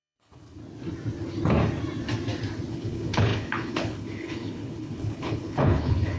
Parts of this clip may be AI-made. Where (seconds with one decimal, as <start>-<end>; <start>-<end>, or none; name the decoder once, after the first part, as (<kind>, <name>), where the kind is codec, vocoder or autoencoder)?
0.0-0.6 (codec, HILCodec); 2.7-6.2